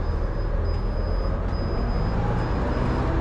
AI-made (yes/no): no